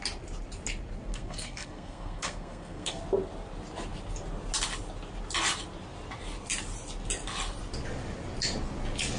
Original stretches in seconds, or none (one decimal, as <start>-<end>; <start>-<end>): 0.0-1.1; 3.0-9.2